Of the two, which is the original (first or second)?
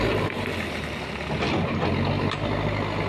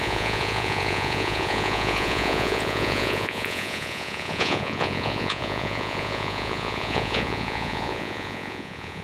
first